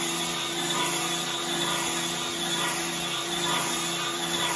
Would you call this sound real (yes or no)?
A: yes